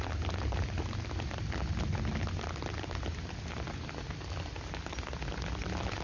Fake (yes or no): no